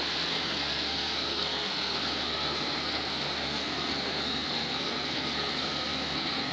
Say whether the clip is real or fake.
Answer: fake